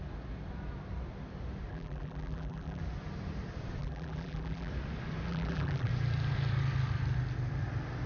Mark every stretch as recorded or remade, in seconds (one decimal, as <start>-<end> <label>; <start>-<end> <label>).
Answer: 0.0-1.7 recorded; 1.7-2.8 remade; 2.8-3.8 recorded; 3.8-4.7 remade; 4.7-5.3 recorded; 5.3-5.9 remade; 5.9-8.1 recorded